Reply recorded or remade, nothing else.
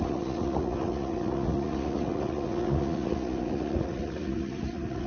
remade